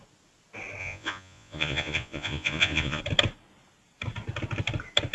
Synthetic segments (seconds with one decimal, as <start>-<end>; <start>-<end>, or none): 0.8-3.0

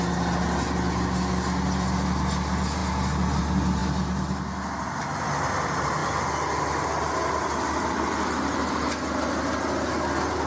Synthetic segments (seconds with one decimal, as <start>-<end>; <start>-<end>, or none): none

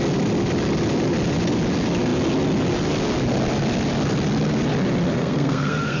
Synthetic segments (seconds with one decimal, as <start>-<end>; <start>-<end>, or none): 5.2-6.0

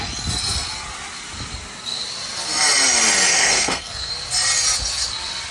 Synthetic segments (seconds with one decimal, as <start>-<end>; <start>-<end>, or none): 3.3-4.1

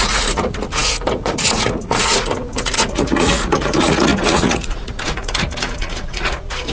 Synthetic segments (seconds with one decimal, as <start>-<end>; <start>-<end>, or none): 0.0-6.7

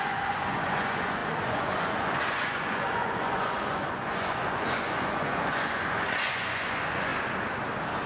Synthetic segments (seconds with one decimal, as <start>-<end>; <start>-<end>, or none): 0.0-7.1

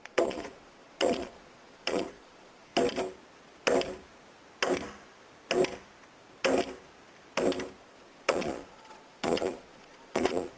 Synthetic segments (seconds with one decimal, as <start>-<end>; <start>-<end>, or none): 0.0-2.7; 7.8-10.6